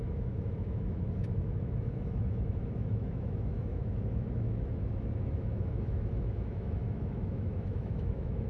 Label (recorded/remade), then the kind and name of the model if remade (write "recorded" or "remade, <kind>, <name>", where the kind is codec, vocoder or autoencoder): remade, autoencoder, DAC-VAE